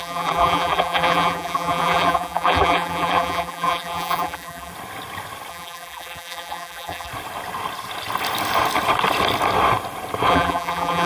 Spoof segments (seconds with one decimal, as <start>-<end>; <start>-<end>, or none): 0.0-4.7; 5.5-7.1; 10.3-11.1